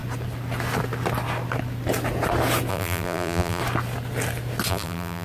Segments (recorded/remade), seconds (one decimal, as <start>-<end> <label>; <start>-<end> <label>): 0.0-2.7 recorded; 2.7-3.6 remade; 3.6-4.7 recorded; 4.7-5.2 remade

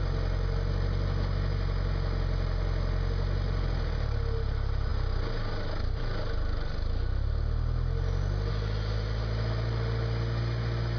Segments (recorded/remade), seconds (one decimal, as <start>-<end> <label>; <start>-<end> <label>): 0.0-11.0 recorded

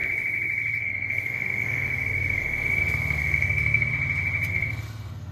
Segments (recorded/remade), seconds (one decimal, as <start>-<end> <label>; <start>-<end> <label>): 0.0-0.8 recorded; 0.8-3.9 remade; 3.9-4.5 recorded; 4.5-5.3 remade

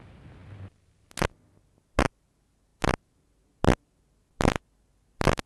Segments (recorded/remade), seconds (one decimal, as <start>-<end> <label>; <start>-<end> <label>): 0.0-5.5 recorded

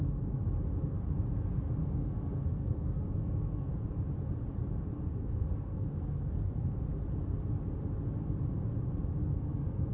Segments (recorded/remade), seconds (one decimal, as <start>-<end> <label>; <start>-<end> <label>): 0.0-1.8 recorded; 1.8-3.7 remade; 3.7-5.1 recorded; 5.1-6.8 remade; 6.8-9.2 recorded; 9.2-9.9 remade